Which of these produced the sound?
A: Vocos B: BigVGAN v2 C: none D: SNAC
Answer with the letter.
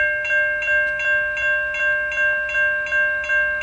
C